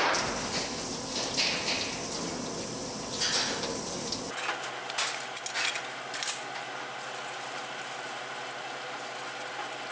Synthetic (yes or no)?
no